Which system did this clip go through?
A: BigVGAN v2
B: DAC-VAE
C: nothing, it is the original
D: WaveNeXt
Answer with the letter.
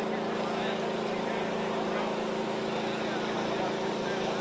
C